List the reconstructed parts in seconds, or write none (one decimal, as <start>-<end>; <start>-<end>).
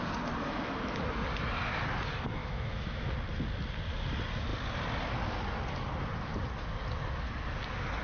2.4-3.1